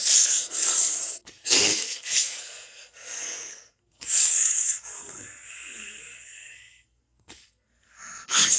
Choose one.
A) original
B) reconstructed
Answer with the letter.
B